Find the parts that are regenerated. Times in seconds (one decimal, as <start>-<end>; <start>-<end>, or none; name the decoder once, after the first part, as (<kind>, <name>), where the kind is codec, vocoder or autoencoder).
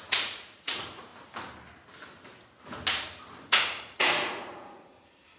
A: 0.0-1.1 (vocoder, Vocos); 3.4-5.4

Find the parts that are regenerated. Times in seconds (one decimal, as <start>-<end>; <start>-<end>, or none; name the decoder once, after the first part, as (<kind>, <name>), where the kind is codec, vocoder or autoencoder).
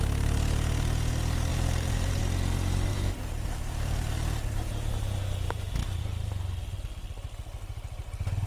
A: 1.5-2.2 (vocoder, BigVGAN v2); 2.9-4.7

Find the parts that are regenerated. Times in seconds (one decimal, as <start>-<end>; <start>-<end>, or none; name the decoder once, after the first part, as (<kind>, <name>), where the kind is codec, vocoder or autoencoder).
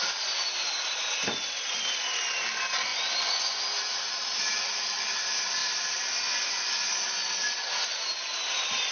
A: 2.9-3.6 (vocoder, Vocos)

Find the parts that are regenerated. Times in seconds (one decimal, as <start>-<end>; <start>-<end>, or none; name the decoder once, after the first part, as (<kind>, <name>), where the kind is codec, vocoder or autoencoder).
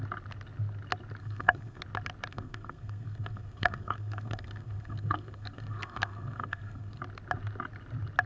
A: 1.2-1.8 (codec, SNAC); 2.3-7.0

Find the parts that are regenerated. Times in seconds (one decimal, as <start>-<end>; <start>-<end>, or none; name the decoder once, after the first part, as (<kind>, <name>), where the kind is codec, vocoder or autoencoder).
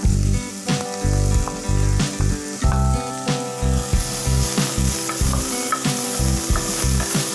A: none